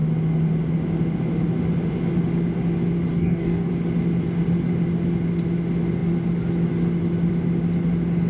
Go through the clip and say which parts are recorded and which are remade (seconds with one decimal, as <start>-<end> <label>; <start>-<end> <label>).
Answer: 0.0-3.1 recorded; 3.1-3.7 remade; 3.7-8.3 recorded